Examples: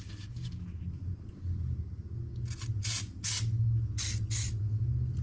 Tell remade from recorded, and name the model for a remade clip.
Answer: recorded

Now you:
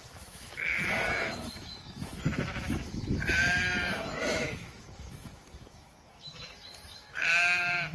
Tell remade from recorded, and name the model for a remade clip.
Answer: remade, autoencoder, DAC-VAE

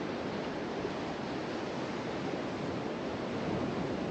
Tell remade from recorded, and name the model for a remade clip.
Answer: recorded